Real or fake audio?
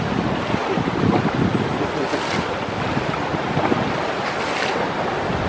real